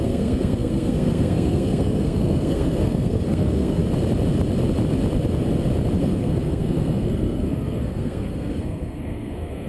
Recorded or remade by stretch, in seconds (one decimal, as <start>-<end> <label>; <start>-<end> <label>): 0.0-3.8 remade; 3.8-6.0 recorded; 6.0-9.7 remade